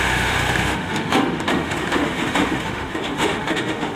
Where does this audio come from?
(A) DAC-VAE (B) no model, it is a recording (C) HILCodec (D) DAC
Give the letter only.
A